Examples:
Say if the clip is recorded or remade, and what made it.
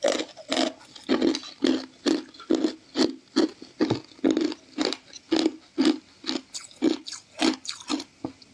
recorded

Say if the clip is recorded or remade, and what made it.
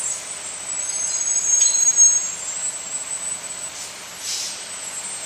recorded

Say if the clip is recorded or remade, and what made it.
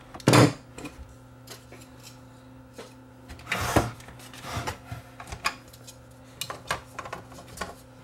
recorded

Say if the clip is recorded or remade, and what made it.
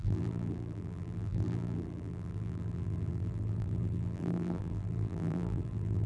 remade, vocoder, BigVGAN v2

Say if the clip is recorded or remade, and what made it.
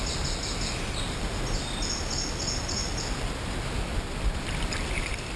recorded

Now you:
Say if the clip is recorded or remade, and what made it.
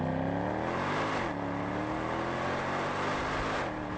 recorded